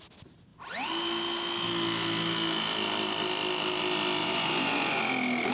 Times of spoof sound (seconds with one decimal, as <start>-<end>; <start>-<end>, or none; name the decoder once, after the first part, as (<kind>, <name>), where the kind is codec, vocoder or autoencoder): 4.2-5.0 (vocoder, Vocos)